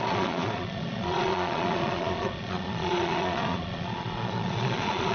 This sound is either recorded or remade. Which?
remade